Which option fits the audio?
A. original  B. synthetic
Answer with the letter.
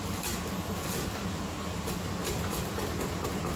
A